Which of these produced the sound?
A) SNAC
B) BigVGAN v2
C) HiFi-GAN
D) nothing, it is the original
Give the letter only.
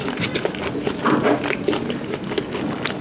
D